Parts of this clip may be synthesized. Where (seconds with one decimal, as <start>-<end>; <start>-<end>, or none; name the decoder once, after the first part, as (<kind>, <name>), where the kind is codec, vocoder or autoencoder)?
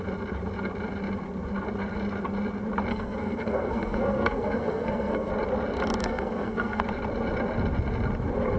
2.9-5.3 (codec, SNAC); 6.0-6.8